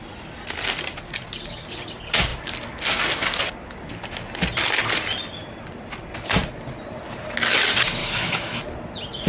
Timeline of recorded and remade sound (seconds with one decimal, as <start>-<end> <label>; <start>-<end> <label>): 0.0-8.0 recorded; 8.0-8.6 remade; 8.6-9.3 recorded